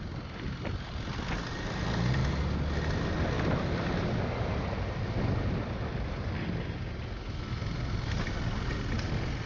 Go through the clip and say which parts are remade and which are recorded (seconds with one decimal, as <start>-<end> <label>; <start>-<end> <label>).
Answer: 0.0-9.5 recorded